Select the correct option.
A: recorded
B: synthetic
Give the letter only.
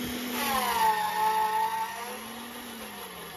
A